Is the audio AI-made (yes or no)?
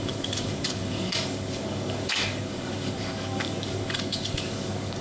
yes